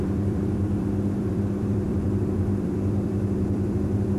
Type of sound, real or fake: fake